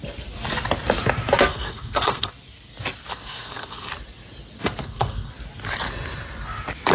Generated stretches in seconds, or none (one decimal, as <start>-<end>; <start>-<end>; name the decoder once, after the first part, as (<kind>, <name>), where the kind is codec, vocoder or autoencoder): 1.5-2.3 (codec, SNAC); 3.1-3.9; 4.6-5.3